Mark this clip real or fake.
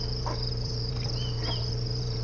fake